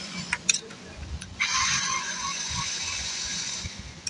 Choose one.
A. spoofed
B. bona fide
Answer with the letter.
A